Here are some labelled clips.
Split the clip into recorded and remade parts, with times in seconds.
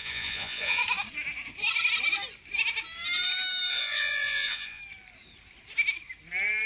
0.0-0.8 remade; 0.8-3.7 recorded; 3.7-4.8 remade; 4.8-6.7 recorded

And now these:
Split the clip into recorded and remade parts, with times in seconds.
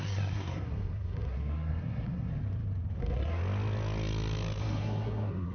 0.0-2.3 remade; 2.3-3.0 recorded; 3.0-3.4 remade; 3.4-4.6 recorded; 4.6-5.5 remade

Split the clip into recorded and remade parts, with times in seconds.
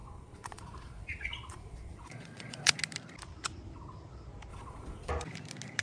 0.0-2.8 remade; 2.8-4.5 recorded; 4.5-5.1 remade; 5.1-5.8 recorded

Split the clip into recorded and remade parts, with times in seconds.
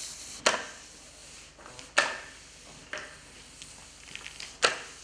0.0-5.0 recorded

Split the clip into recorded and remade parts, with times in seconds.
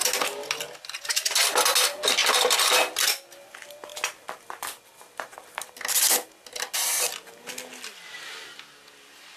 0.0-9.4 recorded